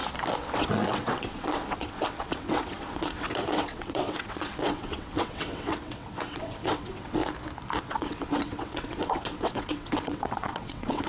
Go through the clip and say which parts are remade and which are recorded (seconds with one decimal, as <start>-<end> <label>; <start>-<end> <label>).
0.0-0.5 recorded; 0.5-7.2 remade; 7.2-7.8 recorded; 7.8-11.1 remade